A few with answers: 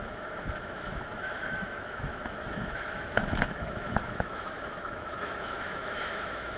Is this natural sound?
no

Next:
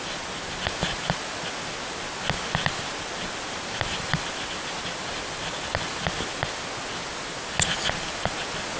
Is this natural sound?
yes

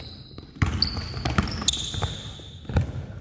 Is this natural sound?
yes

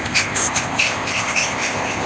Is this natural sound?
no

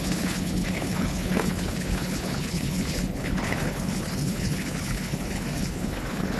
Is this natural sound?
no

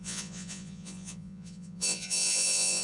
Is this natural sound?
no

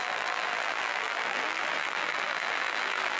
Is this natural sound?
no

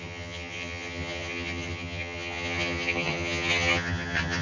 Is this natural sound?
no